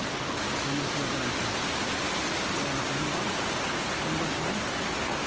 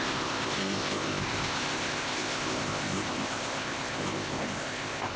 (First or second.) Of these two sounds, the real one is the first